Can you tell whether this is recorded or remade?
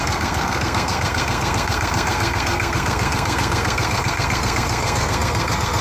remade